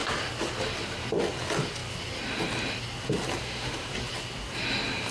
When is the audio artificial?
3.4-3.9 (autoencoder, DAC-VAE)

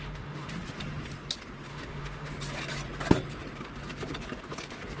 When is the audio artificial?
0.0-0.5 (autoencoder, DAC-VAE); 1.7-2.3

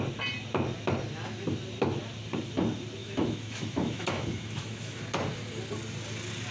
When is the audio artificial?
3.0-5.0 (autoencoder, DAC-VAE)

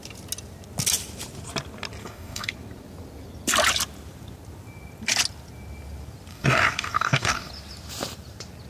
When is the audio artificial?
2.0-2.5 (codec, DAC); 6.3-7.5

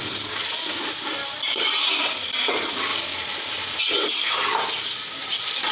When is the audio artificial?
none